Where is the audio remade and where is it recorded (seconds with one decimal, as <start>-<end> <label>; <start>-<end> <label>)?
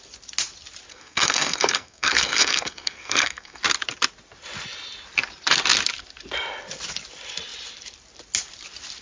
0.0-0.9 recorded; 0.9-3.6 remade; 3.6-9.0 recorded